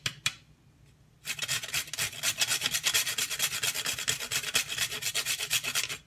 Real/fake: real